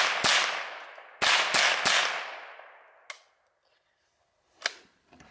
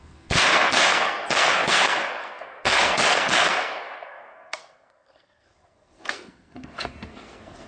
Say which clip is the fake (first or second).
second